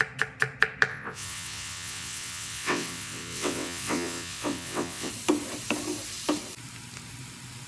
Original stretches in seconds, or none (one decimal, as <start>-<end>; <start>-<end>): 0.0-0.9; 5.1-7.7